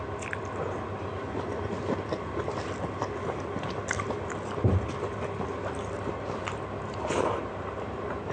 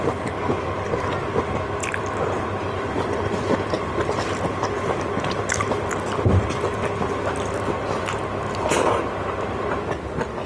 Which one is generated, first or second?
first